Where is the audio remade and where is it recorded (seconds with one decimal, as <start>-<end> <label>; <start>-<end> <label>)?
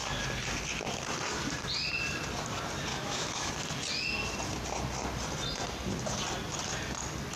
0.0-2.9 recorded; 2.9-3.5 remade; 3.5-7.4 recorded